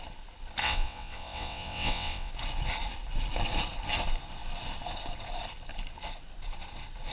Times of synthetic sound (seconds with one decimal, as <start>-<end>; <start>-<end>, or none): 0.6-2.3